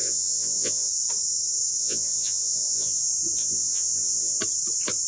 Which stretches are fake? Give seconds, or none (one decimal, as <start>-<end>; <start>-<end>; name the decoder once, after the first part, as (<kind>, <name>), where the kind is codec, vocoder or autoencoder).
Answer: 0.0-0.9 (vocoder, Vocos); 1.8-3.0; 3.4-4.4